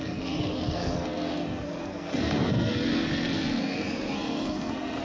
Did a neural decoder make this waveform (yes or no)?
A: yes